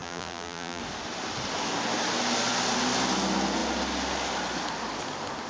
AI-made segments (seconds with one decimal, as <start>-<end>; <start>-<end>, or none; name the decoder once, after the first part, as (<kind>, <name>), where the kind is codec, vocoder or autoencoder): 0.0-0.8 (vocoder, BigVGAN v2)